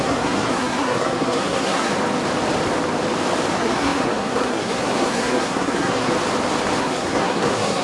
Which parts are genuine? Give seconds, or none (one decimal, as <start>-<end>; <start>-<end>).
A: 1.9-3.5; 6.1-6.8